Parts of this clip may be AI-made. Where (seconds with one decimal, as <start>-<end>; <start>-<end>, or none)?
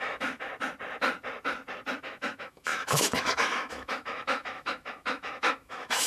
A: 0.0-0.5; 2.0-6.1